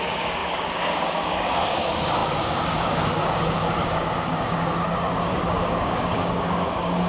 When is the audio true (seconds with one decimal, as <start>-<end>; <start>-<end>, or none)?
none